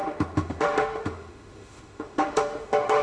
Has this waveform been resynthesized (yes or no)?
yes